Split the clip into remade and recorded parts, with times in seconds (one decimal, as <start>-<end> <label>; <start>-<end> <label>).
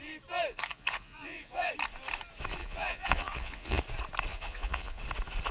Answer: 0.0-0.5 recorded; 0.5-1.7 remade; 1.7-2.6 recorded; 2.6-3.8 remade; 3.8-4.3 recorded; 4.3-5.0 remade; 5.0-5.5 recorded